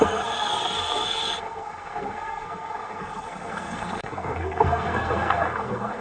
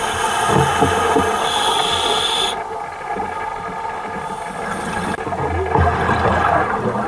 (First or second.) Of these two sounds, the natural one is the second